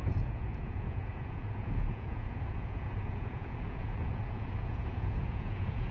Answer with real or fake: fake